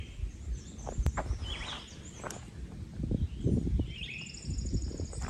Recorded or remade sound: recorded